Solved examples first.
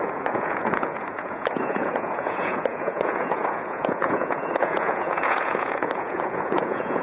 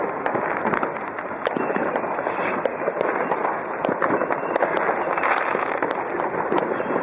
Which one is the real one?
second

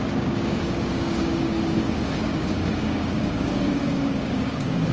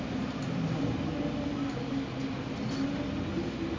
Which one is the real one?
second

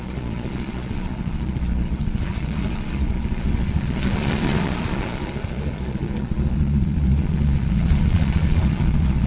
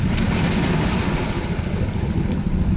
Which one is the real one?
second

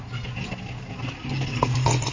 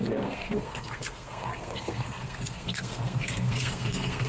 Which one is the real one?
first